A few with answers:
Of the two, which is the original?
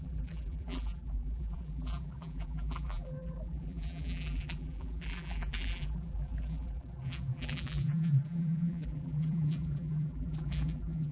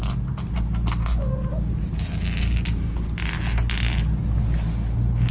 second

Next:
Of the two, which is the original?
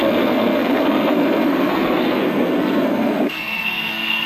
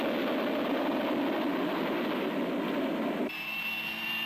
second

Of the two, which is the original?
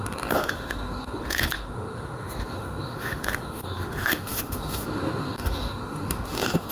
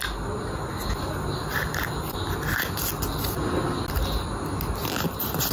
second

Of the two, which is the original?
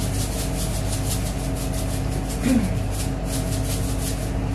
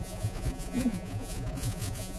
first